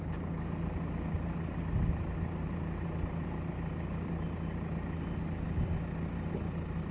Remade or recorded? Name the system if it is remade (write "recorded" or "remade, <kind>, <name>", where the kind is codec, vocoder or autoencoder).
recorded